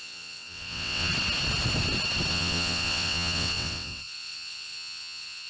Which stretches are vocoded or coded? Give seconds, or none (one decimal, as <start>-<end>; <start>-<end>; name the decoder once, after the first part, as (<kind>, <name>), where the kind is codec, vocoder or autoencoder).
0.0-1.1 (vocoder, WaveNeXt); 2.3-5.5